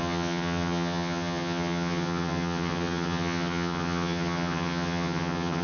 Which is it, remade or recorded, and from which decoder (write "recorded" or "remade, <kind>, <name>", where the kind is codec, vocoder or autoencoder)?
remade, vocoder, HiFi-GAN